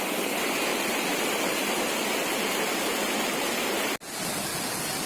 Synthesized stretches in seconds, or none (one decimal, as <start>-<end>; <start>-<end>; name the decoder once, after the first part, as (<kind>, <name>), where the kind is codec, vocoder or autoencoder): 0.7-1.8 (vocoder, BigVGAN v2)